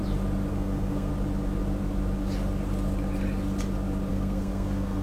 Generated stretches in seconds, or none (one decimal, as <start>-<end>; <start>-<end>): 0.5-1.1; 4.1-5.0